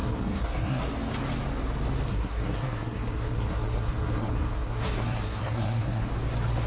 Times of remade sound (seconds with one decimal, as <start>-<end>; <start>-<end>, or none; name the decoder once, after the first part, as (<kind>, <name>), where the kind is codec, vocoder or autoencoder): 0.0-0.8 (codec, SNAC); 2.1-6.1